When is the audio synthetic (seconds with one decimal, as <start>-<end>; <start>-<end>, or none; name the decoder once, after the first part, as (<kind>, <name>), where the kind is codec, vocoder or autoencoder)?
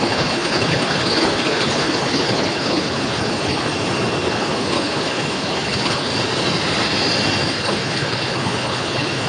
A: 0.0-3.7 (codec, HILCodec); 4.3-6.1; 7.5-9.3